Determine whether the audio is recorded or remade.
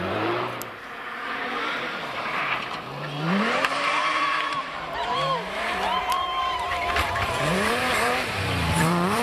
remade